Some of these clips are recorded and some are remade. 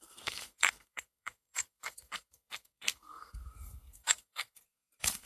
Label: remade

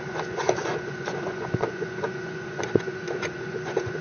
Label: remade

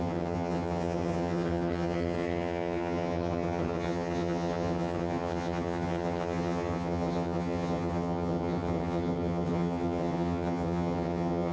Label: remade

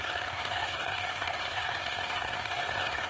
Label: remade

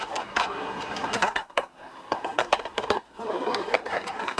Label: remade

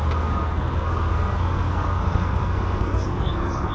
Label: remade